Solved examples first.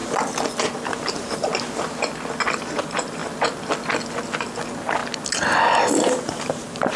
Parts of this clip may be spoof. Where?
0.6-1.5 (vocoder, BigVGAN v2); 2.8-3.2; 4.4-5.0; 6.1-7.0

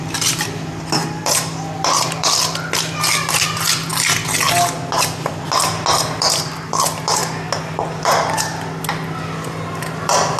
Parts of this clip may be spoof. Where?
0.0-3.9 (vocoder, BigVGAN v2); 5.9-7.2; 8.0-10.4

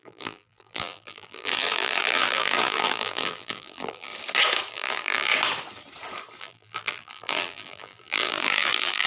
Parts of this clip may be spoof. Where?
0.0-4.1 (vocoder, BigVGAN v2); 4.7-5.3; 6.4-9.1

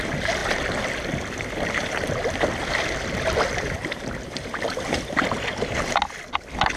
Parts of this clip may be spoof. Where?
none

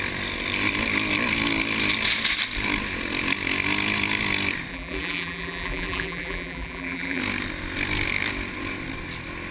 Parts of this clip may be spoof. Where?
4.7-7.2 (vocoder, BigVGAN v2)

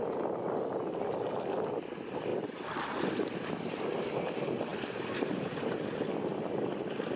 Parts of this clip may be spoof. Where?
4.7-5.7 (vocoder, BigVGAN v2)

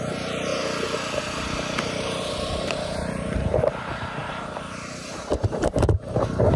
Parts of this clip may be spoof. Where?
0.0-0.5 (vocoder, BigVGAN v2); 1.2-6.6

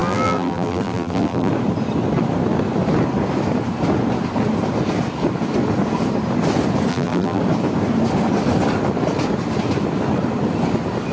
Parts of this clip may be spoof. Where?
0.0-1.5 (vocoder, BigVGAN v2); 6.9-7.4